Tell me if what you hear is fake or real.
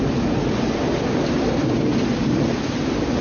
real